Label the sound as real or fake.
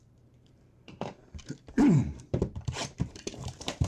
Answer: fake